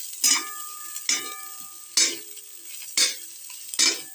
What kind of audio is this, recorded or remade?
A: recorded